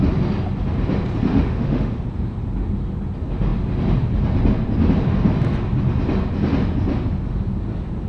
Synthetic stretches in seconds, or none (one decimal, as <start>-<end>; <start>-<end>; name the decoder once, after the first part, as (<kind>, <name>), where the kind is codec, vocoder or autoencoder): 1.3-2.0 (autoencoder, DAC-VAE)